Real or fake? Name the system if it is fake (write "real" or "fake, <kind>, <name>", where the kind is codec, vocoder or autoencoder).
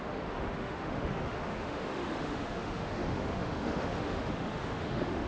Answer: fake, autoencoder, DAC-VAE